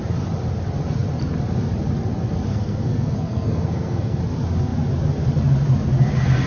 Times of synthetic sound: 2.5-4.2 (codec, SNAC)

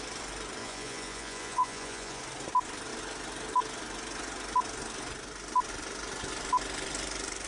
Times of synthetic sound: 0.6-2.2 (vocoder, Vocos)

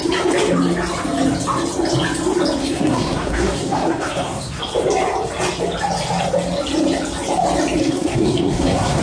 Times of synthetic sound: 2.6-4.6 (codec, SNAC); 7.8-9.0

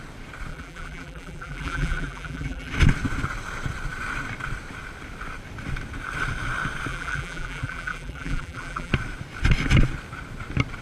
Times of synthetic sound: 0.5-2.7 (vocoder, BigVGAN v2); 6.9-8.9

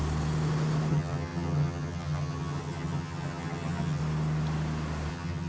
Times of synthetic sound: 0.9-4.0 (vocoder, HiFi-GAN); 5.1-5.5

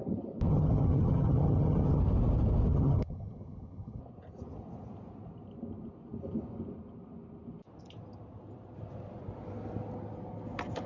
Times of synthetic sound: 0.5-2.0 (vocoder, HiFi-GAN); 2.7-4.0

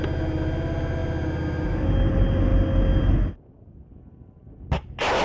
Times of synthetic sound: none

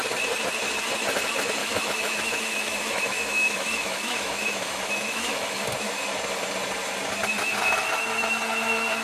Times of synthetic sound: 1.6-5.6 (autoencoder, DAC-VAE)